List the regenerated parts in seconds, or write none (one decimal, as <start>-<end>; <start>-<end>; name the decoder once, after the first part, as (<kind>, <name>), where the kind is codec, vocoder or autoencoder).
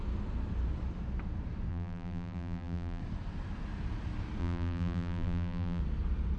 1.7-3.0 (vocoder, BigVGAN v2); 4.4-5.8